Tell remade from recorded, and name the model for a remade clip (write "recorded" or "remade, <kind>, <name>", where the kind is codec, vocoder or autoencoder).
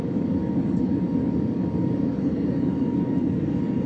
remade, codec, DAC